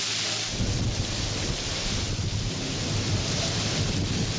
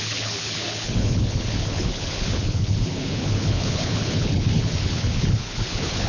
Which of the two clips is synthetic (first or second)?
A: second